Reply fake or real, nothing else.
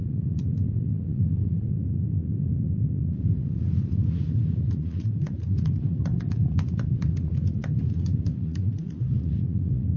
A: fake